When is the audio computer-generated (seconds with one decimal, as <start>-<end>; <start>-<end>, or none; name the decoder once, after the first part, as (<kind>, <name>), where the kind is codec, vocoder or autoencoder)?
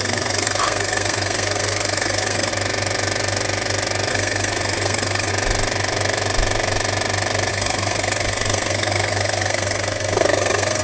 0.0-2.5 (codec, SNAC); 4.1-5.3; 7.5-10.8